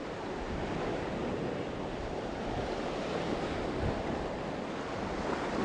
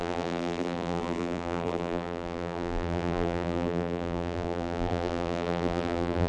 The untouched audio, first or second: first